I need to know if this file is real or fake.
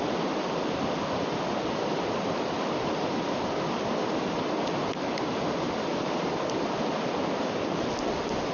real